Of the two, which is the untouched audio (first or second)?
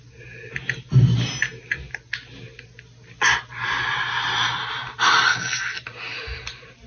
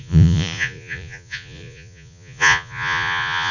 first